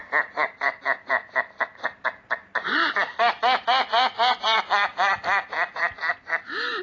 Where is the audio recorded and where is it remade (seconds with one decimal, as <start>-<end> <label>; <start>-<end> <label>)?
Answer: 0.0-6.8 recorded